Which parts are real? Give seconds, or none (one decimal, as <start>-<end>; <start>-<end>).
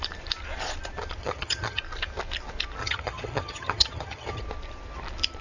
0.0-1.2; 1.8-2.8; 4.4-5.4